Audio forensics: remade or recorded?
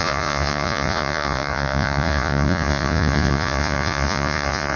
remade